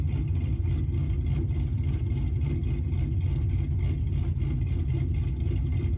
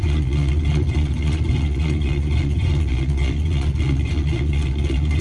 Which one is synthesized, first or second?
second